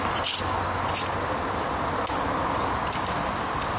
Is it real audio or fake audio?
real